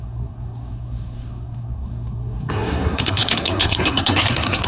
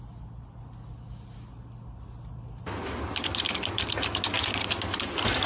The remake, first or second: first